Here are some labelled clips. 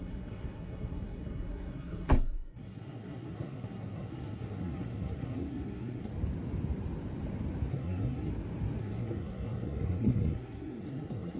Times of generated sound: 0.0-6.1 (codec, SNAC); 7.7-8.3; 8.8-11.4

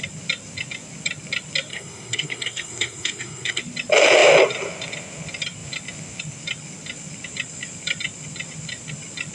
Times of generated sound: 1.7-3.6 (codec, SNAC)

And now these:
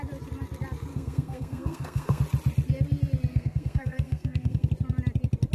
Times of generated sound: 0.9-2.2 (codec, SNAC); 3.3-4.7